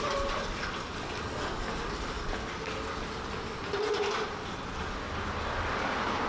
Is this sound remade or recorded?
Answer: recorded